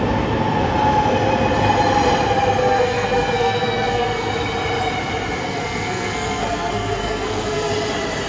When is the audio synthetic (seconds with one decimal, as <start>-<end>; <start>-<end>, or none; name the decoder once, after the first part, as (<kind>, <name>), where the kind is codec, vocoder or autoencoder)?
2.6-4.3 (codec, SNAC); 5.4-7.7